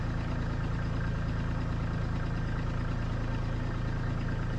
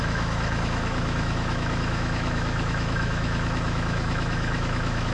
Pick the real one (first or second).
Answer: first